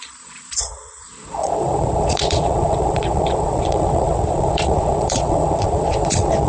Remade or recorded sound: remade